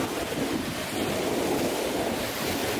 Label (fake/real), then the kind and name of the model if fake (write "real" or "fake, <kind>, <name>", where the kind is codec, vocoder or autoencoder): real